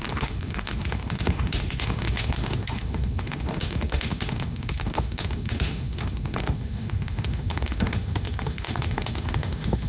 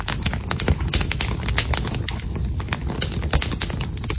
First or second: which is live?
second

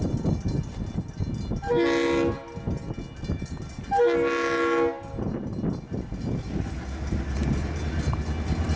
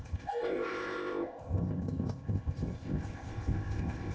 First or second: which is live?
first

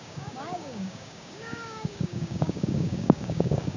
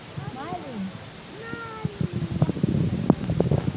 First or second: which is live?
second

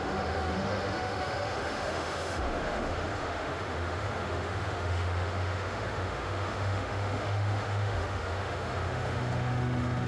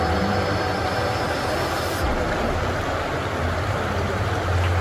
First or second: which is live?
second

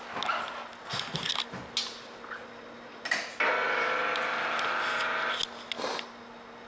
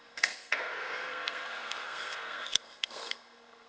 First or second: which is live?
first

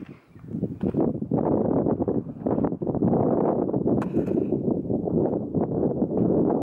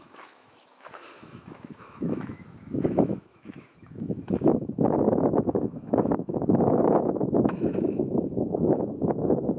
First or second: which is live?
first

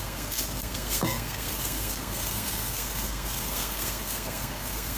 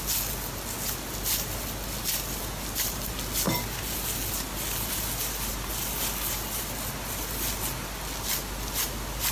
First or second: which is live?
second